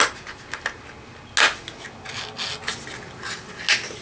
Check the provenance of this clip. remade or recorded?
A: recorded